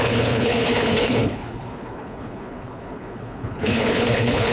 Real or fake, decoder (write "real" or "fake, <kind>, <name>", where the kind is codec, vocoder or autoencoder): fake, codec, HILCodec